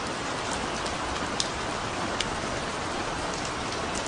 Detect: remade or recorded recorded